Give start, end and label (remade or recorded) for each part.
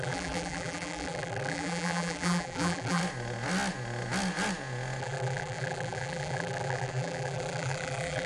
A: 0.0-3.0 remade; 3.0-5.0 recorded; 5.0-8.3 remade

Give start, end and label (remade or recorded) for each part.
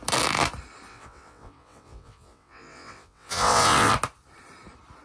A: 0.0-0.9 recorded; 0.9-3.9 remade; 3.9-5.0 recorded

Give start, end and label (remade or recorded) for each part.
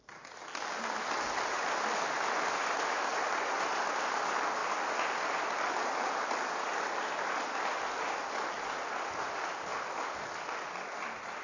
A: 0.0-11.4 recorded